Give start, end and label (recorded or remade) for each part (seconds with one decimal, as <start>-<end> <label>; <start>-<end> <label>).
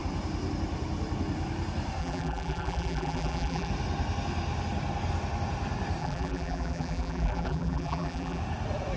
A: 0.0-2.0 recorded; 2.0-3.7 remade; 3.7-6.0 recorded; 6.0-8.4 remade; 8.4-9.0 recorded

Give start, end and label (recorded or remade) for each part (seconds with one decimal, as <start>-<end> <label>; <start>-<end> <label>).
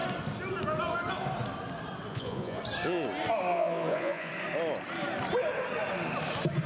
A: 0.0-2.1 recorded; 2.1-2.6 remade; 2.6-3.5 recorded; 3.5-4.3 remade; 4.3-6.7 recorded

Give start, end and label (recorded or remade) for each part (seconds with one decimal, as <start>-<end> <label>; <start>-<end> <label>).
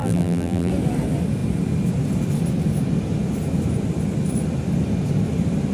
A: 0.0-0.7 remade; 0.7-5.7 recorded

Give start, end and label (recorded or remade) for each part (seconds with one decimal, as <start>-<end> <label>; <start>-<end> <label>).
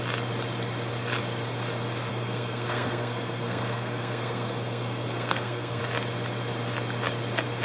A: 0.0-2.1 recorded; 2.1-5.8 remade; 5.8-7.6 recorded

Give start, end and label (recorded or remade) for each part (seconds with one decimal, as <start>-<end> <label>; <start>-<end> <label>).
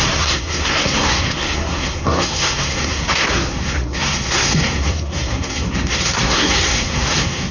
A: 0.0-7.5 remade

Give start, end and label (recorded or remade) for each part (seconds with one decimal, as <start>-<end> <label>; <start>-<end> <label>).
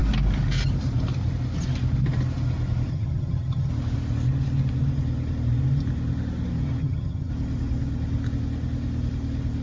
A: 0.0-2.9 recorded; 2.9-3.7 remade; 3.7-6.8 recorded; 6.8-7.3 remade; 7.3-9.6 recorded